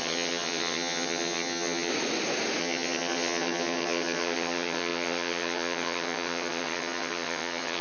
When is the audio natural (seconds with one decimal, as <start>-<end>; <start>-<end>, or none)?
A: 1.9-2.6